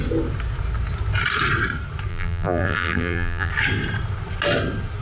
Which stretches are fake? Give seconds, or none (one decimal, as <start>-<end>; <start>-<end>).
2.1-3.5